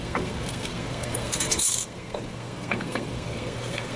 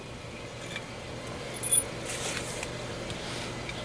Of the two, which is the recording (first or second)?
second